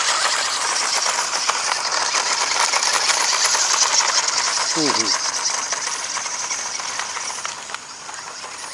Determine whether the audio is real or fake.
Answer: real